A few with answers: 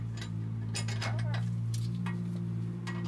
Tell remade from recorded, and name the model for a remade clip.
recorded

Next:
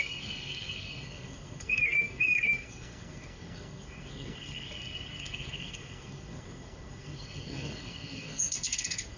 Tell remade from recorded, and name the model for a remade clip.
remade, codec, SNAC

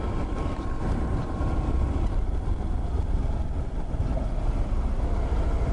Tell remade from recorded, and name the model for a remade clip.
recorded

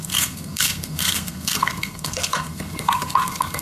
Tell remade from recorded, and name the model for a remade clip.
remade, codec, SNAC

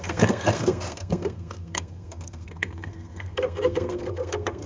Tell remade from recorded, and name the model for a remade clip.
remade, codec, SNAC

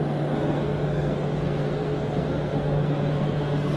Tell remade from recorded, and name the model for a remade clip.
remade, codec, SNAC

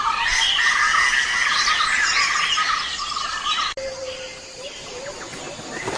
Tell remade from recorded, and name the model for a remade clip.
recorded